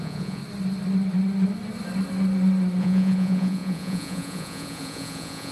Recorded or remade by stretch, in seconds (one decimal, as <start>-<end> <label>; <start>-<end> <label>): 0.0-0.4 remade; 0.4-2.8 recorded; 2.8-5.5 remade